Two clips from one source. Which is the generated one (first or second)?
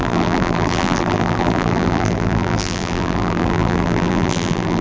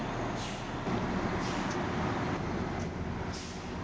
first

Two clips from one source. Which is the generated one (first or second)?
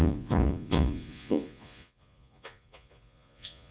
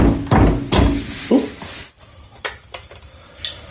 first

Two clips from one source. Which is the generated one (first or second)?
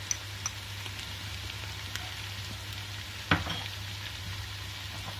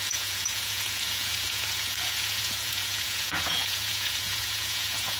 second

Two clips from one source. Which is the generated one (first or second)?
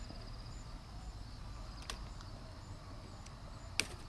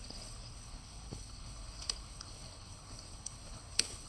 second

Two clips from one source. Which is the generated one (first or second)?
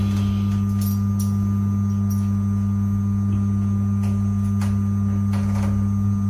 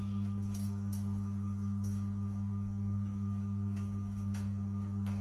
second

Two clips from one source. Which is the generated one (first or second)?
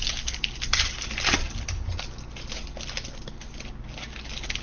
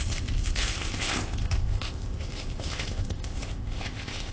second